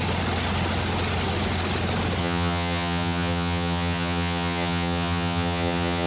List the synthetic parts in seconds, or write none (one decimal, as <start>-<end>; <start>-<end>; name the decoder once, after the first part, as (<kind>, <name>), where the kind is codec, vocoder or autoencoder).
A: 2.2-6.1 (vocoder, HiFi-GAN)